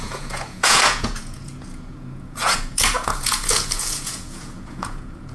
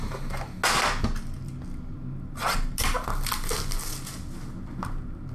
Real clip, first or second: second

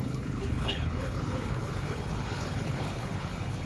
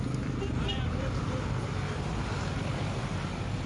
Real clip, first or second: second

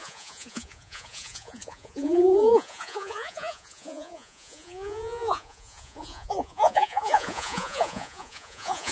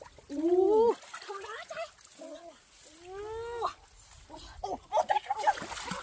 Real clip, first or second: second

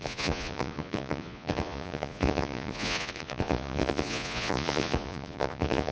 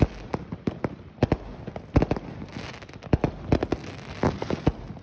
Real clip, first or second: second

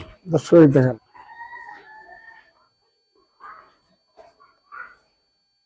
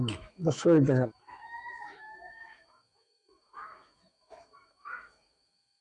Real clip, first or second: first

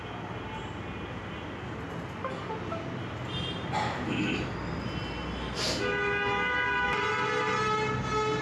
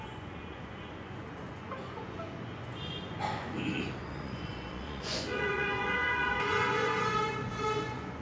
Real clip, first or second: first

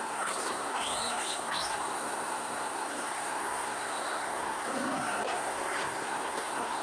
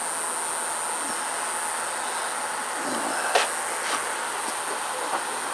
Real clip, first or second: second